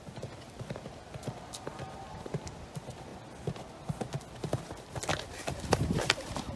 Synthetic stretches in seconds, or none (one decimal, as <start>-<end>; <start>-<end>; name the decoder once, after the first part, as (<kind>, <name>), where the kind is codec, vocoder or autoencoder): 1.7-2.3 (vocoder, BigVGAN v2); 5.1-6.6